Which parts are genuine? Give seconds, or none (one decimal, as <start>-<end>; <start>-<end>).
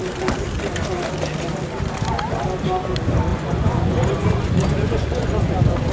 0.0-3.3